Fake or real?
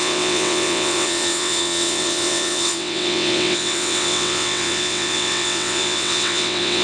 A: fake